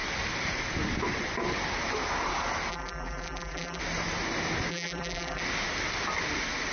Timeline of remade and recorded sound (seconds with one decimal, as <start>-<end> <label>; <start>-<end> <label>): 0.0-2.7 recorded; 2.7-3.8 remade; 3.8-4.7 recorded; 4.7-5.4 remade; 5.4-6.7 recorded